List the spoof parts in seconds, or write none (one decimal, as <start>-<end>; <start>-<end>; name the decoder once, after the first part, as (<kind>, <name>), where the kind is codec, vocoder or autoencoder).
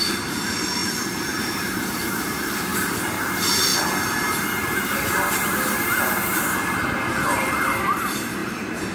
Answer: 0.0-3.7 (vocoder, BigVGAN v2); 7.8-8.9